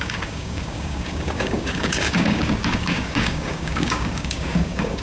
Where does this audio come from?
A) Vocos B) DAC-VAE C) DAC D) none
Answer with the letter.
C